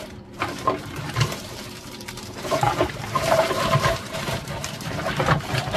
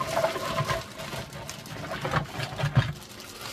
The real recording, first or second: second